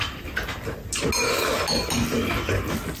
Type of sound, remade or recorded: recorded